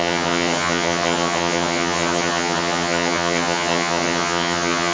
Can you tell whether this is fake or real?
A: fake